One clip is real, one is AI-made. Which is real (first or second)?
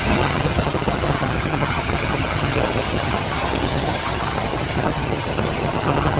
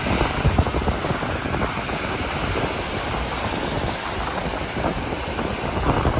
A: second